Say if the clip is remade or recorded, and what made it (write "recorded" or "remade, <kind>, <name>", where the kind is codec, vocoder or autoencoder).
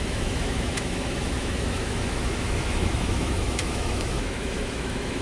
remade, autoencoder, DAC-VAE